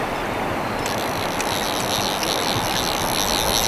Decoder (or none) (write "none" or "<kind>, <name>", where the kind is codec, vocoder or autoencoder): none